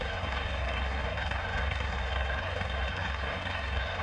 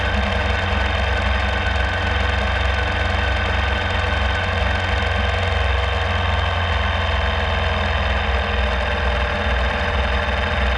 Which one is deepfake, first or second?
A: first